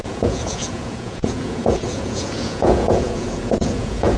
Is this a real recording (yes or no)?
no